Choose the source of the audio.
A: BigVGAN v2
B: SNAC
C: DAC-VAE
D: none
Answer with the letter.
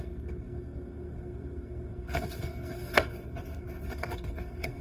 B